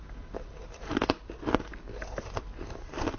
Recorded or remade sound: recorded